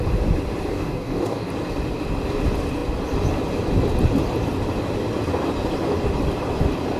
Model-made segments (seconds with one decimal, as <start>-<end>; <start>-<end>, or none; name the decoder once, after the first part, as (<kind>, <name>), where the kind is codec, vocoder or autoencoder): 0.7-1.5 (codec, DAC)